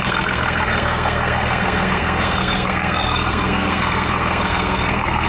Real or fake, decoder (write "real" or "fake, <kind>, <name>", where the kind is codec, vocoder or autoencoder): fake, codec, SNAC